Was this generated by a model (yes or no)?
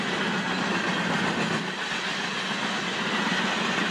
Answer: no